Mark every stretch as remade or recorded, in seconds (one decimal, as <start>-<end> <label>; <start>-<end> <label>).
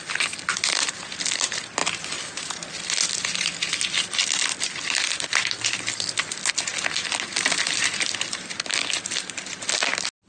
0.0-6.7 recorded; 6.7-8.4 remade; 8.4-10.3 recorded